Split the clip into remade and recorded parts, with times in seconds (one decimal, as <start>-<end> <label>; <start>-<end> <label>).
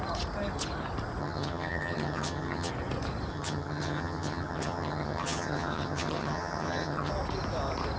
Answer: 0.0-1.2 recorded; 1.2-2.7 remade; 2.7-3.3 recorded; 3.3-7.1 remade; 7.1-8.0 recorded